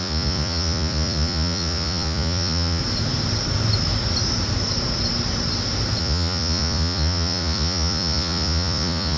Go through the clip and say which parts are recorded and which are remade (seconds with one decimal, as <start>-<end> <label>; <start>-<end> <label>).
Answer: 0.0-2.8 remade; 2.8-6.0 recorded; 6.0-9.2 remade